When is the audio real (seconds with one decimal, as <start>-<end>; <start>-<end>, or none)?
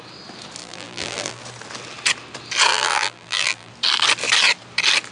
0.0-0.6; 1.4-2.7; 3.7-5.1